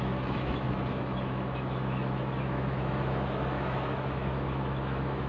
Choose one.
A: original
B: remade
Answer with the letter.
B